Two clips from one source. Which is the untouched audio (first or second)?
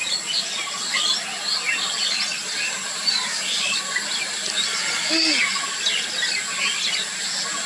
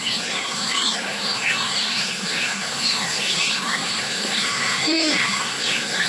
first